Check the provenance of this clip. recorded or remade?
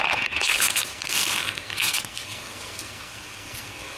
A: remade